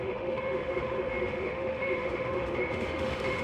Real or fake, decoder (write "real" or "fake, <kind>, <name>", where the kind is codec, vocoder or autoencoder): fake, autoencoder, DAC-VAE